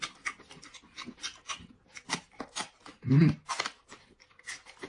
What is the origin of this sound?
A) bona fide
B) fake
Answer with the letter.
A